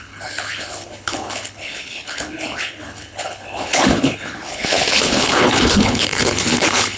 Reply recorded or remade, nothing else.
remade